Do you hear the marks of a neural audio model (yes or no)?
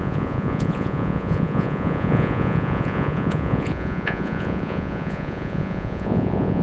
yes